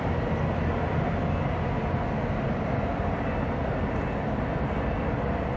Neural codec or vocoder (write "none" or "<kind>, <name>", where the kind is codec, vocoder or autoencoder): none